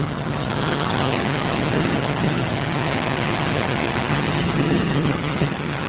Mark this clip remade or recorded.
remade